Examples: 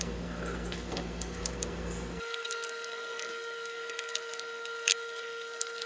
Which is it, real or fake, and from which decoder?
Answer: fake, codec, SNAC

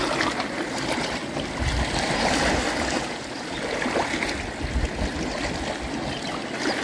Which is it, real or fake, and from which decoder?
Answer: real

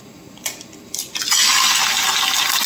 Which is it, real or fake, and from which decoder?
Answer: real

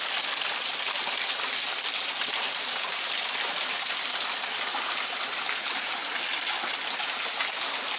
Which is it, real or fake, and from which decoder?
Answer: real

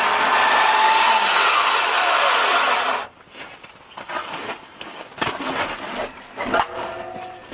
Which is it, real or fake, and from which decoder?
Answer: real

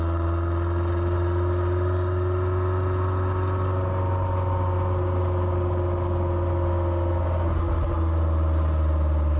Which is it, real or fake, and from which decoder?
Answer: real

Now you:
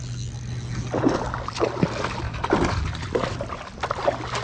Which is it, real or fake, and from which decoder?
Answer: real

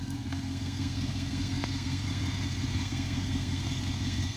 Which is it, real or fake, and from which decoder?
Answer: fake, codec, SNAC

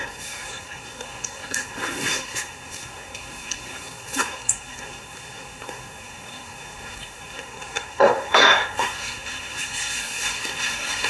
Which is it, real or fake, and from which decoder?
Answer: fake, codec, SNAC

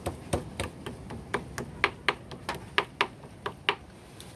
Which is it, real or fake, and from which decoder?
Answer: real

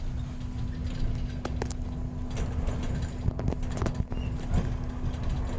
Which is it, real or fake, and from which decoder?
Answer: real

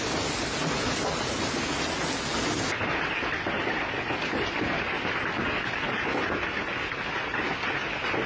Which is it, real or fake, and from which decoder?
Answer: real